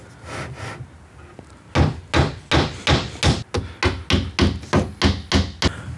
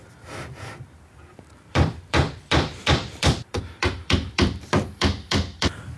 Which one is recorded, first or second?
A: first